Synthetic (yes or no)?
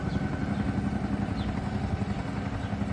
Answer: no